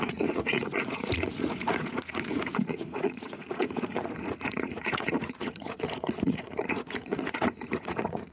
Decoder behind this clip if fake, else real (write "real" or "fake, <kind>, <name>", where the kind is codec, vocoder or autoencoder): fake, vocoder, Vocos